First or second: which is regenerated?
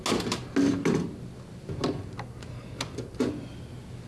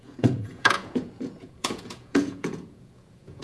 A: second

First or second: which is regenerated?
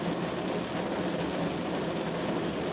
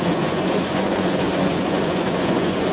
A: second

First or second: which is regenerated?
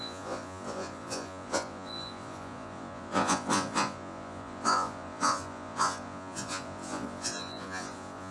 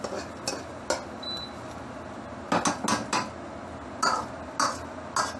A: first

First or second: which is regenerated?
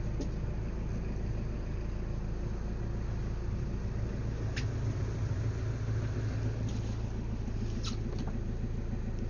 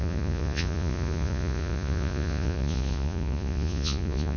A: second